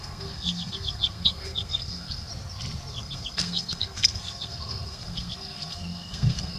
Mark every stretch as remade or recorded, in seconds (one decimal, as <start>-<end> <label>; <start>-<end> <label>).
0.0-2.3 remade; 2.3-2.9 recorded; 2.9-6.6 remade